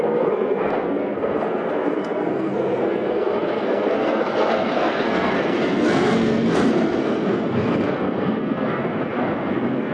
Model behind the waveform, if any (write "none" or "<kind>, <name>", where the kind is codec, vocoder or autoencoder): codec, SNAC